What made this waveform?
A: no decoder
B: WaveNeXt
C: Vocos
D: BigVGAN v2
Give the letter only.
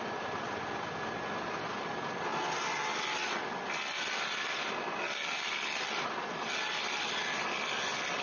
A